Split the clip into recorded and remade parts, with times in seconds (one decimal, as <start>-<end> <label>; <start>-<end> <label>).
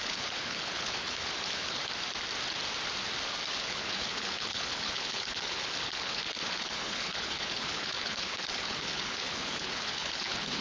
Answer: 0.0-1.8 remade; 1.8-3.5 recorded; 3.5-10.6 remade